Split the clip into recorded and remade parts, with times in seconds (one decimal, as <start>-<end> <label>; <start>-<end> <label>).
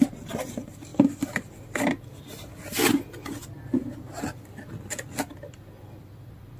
0.0-6.6 recorded